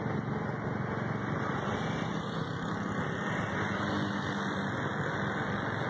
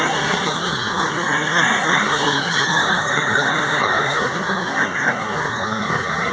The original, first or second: first